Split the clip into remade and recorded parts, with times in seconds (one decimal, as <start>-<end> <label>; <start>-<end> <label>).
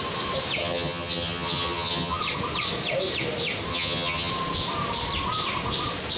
0.0-0.6 recorded; 0.6-2.2 remade; 2.2-3.7 recorded; 3.7-4.3 remade; 4.3-6.2 recorded